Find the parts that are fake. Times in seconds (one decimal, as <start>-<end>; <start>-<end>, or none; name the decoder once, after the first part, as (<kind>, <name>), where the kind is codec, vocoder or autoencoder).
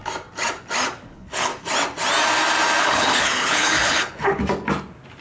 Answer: 1.1-1.5 (codec, HILCodec); 2.8-4.4